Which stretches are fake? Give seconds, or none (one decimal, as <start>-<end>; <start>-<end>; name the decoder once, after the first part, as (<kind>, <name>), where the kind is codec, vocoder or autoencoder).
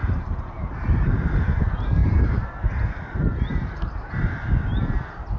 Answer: 0.0-1.6 (vocoder, BigVGAN v2); 2.0-4.1